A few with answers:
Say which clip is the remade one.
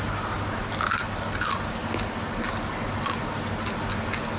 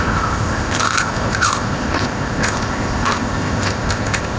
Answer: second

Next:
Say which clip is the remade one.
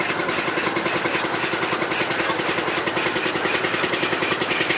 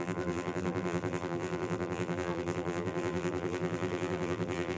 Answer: second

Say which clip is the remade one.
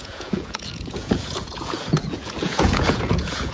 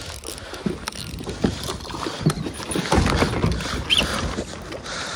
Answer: first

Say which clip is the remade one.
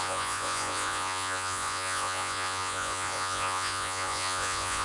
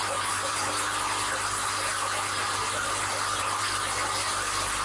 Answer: first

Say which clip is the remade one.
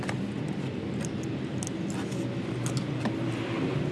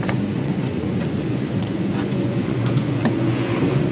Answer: second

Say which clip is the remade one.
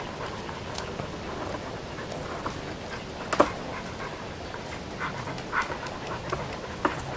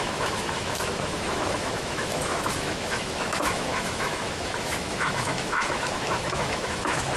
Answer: second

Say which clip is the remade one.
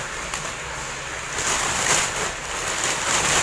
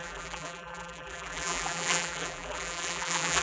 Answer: second